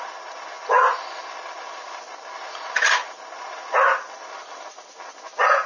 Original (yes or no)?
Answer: yes